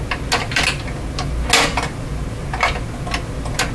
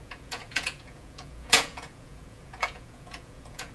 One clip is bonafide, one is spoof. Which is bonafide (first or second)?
first